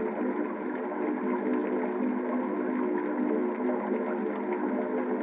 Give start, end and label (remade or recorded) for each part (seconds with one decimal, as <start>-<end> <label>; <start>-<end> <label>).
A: 0.0-5.2 recorded